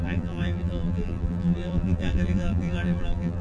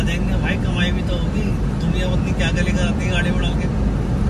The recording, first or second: second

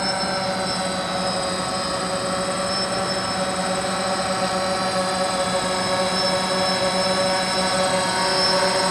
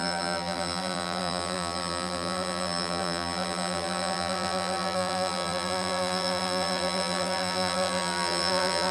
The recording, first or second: first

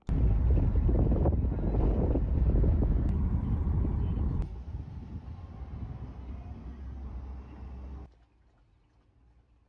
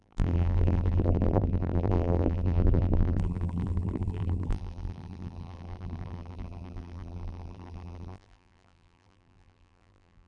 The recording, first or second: first